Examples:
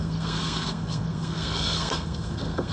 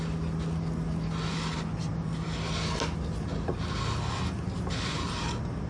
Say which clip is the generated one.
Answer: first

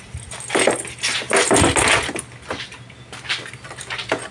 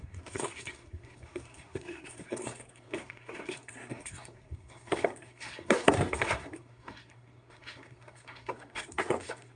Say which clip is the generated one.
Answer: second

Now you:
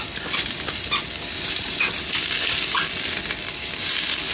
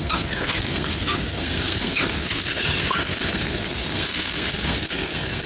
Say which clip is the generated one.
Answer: second